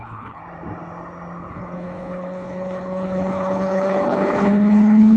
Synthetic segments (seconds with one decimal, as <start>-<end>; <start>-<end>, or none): 0.0-0.4; 1.5-5.2